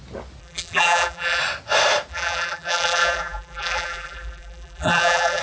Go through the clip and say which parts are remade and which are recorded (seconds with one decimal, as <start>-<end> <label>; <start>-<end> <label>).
0.0-0.4 recorded; 0.4-1.4 remade; 1.4-2.1 recorded; 2.1-5.4 remade